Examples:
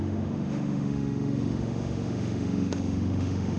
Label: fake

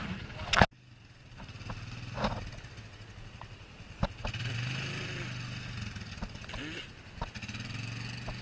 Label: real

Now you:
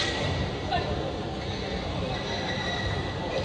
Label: fake